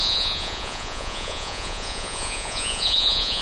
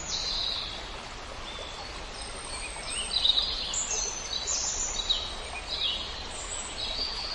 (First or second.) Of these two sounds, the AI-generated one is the first